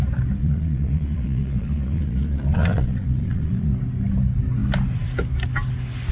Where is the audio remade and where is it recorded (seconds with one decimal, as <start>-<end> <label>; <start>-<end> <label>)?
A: 0.0-0.4 recorded; 0.4-3.7 remade; 3.7-6.1 recorded

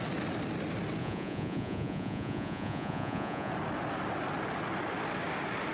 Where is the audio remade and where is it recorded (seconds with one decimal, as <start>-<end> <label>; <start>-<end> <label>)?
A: 0.0-1.0 recorded; 1.0-3.5 remade; 3.5-5.7 recorded